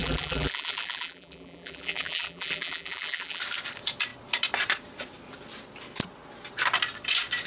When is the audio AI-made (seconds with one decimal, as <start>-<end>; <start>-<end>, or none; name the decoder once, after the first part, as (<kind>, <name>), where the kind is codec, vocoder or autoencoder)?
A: 0.0-3.4 (vocoder, BigVGAN v2)